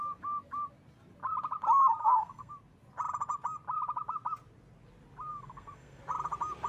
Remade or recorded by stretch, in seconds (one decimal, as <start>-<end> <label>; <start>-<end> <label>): 0.0-2.0 recorded; 2.0-2.5 remade; 2.5-5.3 recorded; 5.3-6.0 remade; 6.0-6.7 recorded

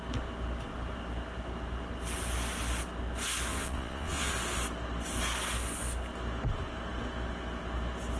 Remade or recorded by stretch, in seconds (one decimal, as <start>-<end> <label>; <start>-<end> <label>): 0.0-3.5 recorded; 3.5-4.3 remade; 4.3-8.2 recorded

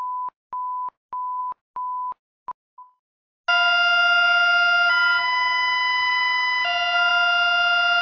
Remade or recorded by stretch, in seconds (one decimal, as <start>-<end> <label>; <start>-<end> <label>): 0.0-8.0 recorded

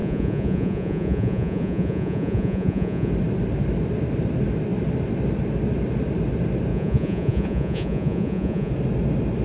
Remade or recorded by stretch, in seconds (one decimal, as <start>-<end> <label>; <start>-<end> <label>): 0.0-3.1 remade; 3.1-6.7 recorded; 6.7-8.7 remade; 8.7-9.4 recorded

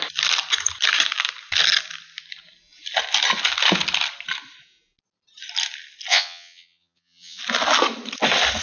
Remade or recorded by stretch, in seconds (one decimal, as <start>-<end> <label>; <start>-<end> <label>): 0.0-6.1 recorded; 6.1-7.4 remade; 7.4-8.6 recorded

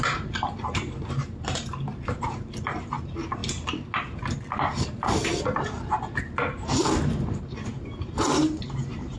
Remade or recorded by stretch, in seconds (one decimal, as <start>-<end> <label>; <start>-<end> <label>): 0.0-3.4 remade; 3.4-5.4 recorded; 5.4-9.2 remade

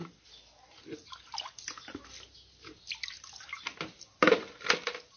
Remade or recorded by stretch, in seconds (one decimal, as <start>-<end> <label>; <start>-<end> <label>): 0.0-5.2 recorded

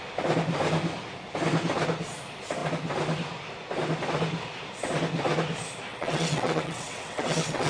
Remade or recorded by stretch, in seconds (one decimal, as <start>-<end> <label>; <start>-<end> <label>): 0.0-5.9 recorded; 5.9-7.7 remade